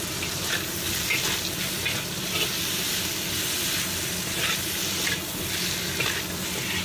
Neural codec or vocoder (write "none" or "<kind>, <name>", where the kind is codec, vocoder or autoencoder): none